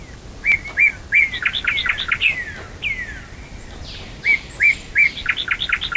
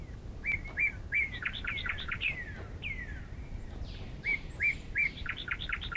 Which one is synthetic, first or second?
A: second